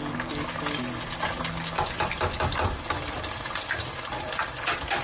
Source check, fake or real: real